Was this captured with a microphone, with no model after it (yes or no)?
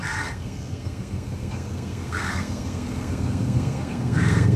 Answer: no